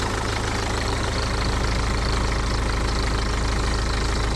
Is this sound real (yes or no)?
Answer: no